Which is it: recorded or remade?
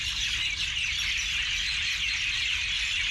recorded